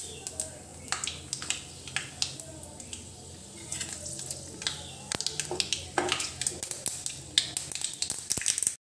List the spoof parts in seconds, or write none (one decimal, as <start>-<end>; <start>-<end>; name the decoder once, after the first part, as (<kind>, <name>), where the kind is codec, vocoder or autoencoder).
none